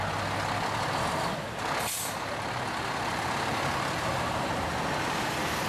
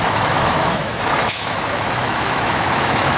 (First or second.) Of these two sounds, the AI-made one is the second